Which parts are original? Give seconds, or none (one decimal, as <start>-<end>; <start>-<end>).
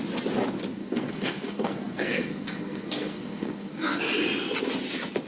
0.0-0.8; 4.0-5.3